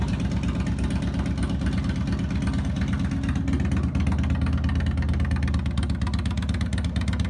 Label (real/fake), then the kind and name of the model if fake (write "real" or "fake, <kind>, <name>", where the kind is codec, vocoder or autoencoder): real